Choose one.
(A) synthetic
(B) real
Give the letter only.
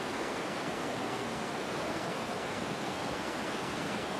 A